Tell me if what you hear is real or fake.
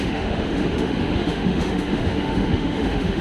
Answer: fake